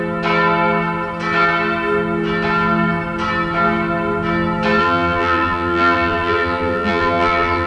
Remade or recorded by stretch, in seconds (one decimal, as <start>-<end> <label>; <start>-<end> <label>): 0.0-4.8 recorded; 4.8-7.7 remade

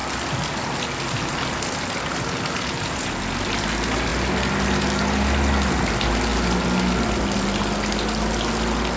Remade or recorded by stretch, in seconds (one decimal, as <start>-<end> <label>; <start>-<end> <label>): 0.0-9.0 recorded